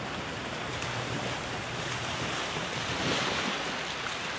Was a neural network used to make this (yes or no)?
no